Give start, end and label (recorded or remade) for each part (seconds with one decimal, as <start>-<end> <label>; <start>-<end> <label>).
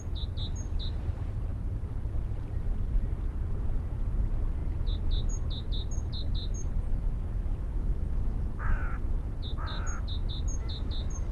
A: 0.0-11.3 recorded